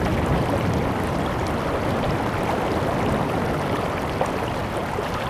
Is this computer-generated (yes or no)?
no